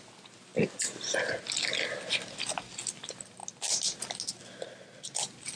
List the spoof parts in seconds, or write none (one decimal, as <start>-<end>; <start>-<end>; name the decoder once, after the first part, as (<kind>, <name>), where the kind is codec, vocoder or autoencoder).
none